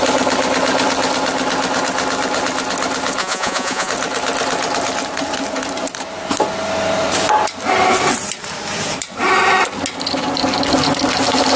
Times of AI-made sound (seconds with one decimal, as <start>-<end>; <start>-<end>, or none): 3.2-3.9